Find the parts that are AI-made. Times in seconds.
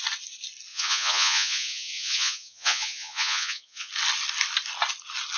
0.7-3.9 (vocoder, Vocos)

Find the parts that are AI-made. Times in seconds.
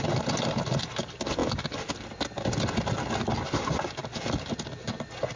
none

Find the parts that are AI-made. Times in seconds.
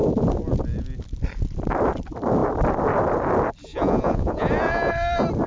3.7-4.9 (vocoder, Vocos)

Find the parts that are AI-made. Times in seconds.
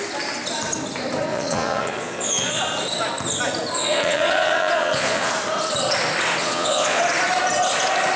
1.3-2.6 (vocoder, Vocos); 3.8-5.3; 6.4-7.0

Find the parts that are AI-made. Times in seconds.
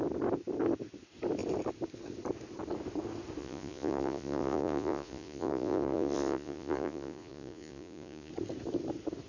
3.4-8.3 (vocoder, Vocos)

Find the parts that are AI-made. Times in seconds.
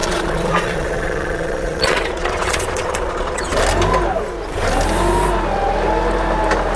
0.0-3.5 (vocoder, Vocos)